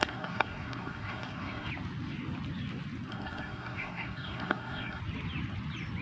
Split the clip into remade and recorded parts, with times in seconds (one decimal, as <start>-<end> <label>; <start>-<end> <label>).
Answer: 0.0-1.7 remade; 1.7-3.1 recorded; 3.1-5.0 remade; 5.0-6.0 recorded